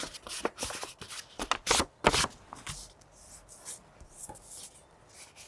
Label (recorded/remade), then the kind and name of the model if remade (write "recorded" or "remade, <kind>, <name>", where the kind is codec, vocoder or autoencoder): recorded